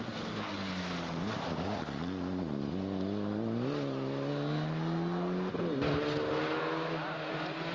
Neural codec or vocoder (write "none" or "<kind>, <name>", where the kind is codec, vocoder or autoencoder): none